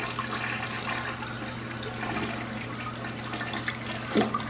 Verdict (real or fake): real